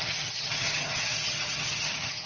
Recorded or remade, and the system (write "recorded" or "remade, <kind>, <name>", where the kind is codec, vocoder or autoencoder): remade, vocoder, HiFi-GAN